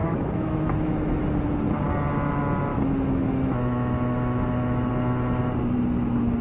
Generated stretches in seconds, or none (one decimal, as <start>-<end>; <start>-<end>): 0.0-1.4; 2.7-4.9